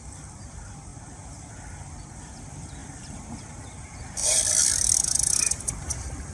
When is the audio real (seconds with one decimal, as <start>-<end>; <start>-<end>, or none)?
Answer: 0.0-0.9; 1.5-2.8; 3.5-4.2; 5.6-6.3